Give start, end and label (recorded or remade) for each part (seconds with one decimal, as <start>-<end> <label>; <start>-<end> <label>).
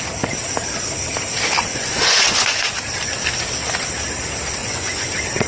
0.0-1.7 recorded; 1.7-2.7 remade; 2.7-4.6 recorded; 4.6-5.1 remade; 5.1-5.5 recorded